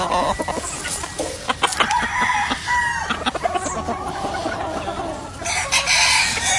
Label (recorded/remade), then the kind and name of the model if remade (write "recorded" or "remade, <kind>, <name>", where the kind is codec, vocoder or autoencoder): recorded